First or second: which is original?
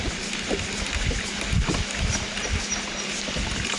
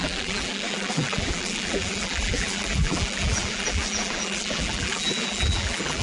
first